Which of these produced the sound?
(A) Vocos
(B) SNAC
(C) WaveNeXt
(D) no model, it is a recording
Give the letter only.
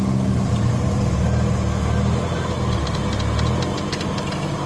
D